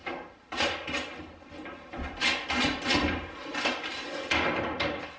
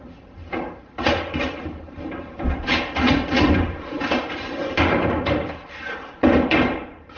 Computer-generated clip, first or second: second